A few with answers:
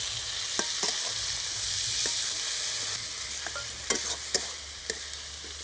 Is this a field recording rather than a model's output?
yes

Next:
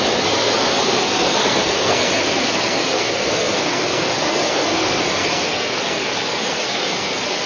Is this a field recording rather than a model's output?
no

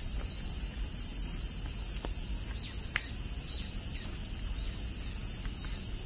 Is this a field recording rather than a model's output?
yes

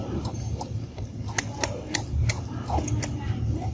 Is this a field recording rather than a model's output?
yes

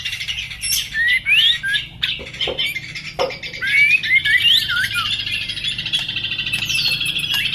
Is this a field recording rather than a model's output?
yes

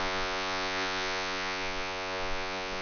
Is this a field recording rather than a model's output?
no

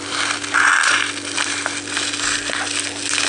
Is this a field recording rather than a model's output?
yes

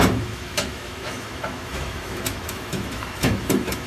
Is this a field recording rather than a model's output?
no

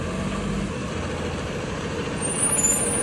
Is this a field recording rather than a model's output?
yes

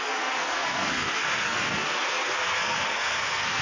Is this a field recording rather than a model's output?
no